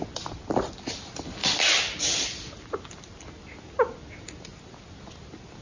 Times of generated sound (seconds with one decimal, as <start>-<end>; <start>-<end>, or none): none